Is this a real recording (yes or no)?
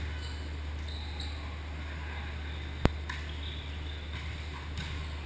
yes